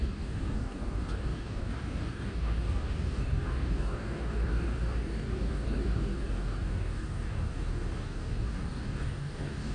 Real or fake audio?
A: fake